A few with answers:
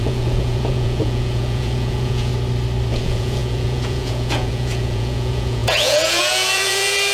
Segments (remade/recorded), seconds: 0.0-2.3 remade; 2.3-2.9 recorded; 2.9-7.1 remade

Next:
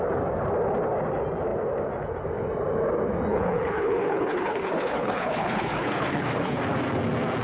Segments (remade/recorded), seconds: 0.0-3.3 recorded; 3.3-6.6 remade; 6.6-7.4 recorded

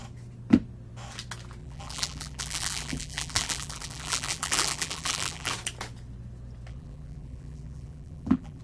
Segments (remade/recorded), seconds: 0.0-1.6 recorded; 1.6-5.5 remade; 5.5-6.7 recorded; 6.7-8.6 remade

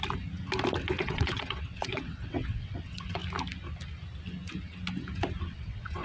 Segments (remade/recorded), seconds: 0.0-1.0 recorded; 1.0-3.2 remade; 3.2-5.4 recorded; 5.4-6.0 remade

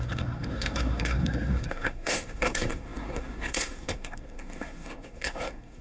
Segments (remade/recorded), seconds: 0.0-5.8 remade

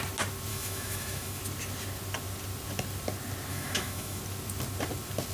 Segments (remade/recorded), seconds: 0.0-0.5 recorded; 0.5-1.4 remade; 1.4-3.5 recorded; 3.5-4.2 remade; 4.2-5.3 recorded

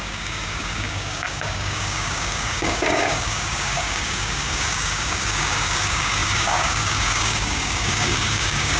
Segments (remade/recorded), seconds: 0.0-8.8 remade